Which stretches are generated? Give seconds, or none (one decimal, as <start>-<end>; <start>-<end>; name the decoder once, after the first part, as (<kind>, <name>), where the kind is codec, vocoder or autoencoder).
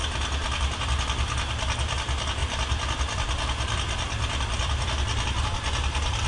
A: 2.4-5.4 (vocoder, BigVGAN v2)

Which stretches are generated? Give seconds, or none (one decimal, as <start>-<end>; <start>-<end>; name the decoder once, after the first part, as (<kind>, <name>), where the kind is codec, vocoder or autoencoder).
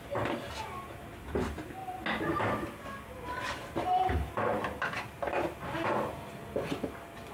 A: none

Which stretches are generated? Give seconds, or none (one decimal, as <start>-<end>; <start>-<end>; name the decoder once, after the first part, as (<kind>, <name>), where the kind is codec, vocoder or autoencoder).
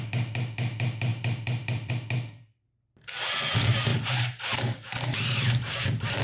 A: 1.1-1.9 (vocoder, BigVGAN v2); 3.9-6.2